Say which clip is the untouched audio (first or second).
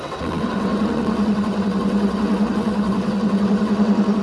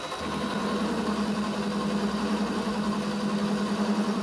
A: second